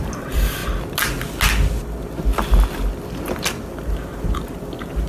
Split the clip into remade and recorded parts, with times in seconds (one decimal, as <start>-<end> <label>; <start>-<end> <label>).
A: 0.0-0.6 remade; 0.6-3.7 recorded; 3.7-5.1 remade